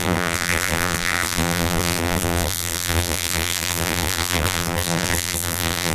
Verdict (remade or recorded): remade